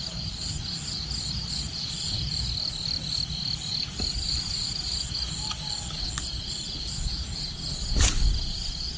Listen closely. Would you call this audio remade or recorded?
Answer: recorded